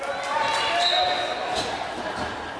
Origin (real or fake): real